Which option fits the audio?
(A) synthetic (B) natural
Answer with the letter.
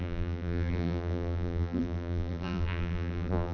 A